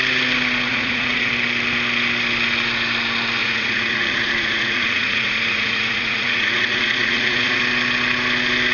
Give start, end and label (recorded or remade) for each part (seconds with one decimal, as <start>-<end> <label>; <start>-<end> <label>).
0.0-0.7 recorded; 0.7-1.3 remade; 1.3-3.4 recorded; 3.4-7.6 remade; 7.6-8.7 recorded